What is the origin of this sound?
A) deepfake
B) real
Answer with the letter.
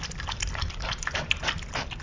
B